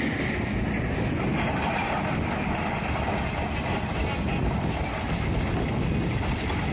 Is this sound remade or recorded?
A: recorded